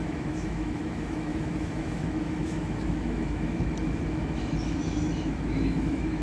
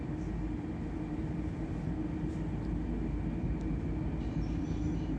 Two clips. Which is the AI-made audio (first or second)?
first